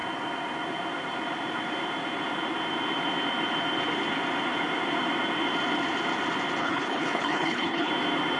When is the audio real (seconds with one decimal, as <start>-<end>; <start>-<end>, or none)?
0.0-6.6; 7.9-8.4